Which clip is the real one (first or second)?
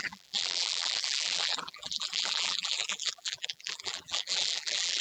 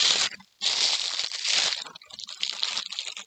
second